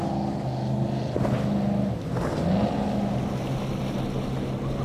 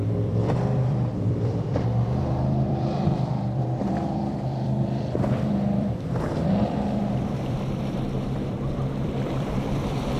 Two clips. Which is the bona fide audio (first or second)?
first